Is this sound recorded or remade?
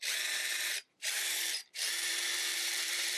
remade